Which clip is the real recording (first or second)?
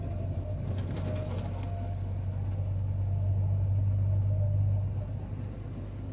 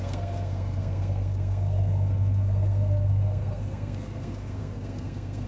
first